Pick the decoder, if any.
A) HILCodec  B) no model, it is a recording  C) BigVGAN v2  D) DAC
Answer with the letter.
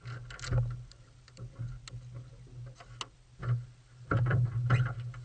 B